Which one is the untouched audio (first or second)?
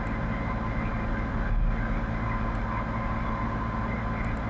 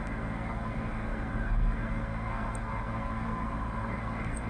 first